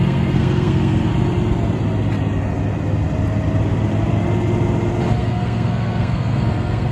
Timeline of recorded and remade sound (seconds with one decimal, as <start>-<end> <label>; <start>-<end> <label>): 0.0-1.1 remade; 1.1-5.2 recorded; 5.2-6.9 remade